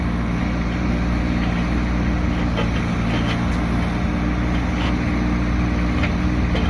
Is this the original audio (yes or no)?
yes